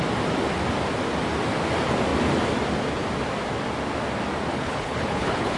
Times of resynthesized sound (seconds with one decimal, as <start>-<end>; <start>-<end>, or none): 4.5-5.6